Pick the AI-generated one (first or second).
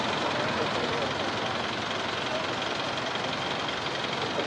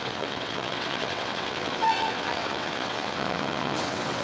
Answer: second